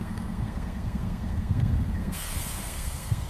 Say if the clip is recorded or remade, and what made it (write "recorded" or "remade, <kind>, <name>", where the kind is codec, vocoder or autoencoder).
remade, codec, SNAC